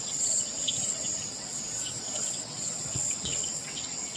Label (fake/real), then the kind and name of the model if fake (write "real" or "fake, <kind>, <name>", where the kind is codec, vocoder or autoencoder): fake, vocoder, WaveNeXt